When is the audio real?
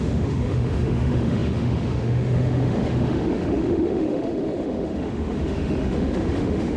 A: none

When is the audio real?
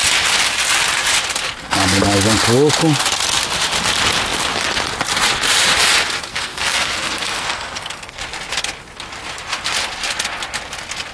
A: 0.0-6.3; 8.2-11.1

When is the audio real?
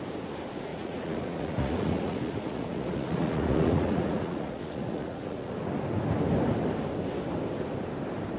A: 0.0-0.7; 5.5-8.4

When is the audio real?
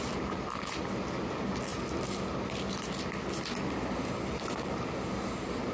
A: 0.0-5.7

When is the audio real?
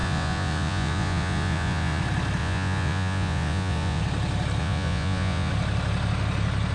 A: 2.0-2.4; 4.0-4.6; 5.5-6.7